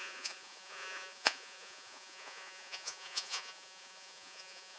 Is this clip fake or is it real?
fake